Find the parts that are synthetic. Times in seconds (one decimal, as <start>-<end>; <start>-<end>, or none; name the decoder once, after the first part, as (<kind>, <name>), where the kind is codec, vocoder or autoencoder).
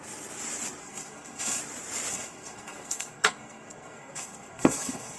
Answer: 0.8-1.6 (codec, SNAC); 2.1-5.2